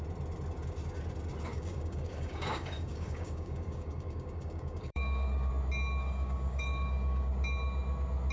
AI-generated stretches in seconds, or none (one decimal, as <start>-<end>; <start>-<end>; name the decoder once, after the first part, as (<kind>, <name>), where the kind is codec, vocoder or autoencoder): 1.5-5.5 (codec, DAC); 6.0-7.3